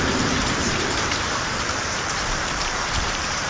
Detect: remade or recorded remade